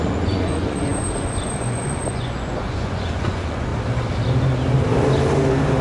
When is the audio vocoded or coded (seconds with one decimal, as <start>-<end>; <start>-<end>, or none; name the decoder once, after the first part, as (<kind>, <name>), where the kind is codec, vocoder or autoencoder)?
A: 0.0-3.7 (vocoder, Vocos)